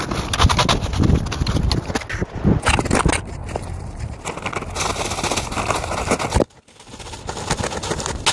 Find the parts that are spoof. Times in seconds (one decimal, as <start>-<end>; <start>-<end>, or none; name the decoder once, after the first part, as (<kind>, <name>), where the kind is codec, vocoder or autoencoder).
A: none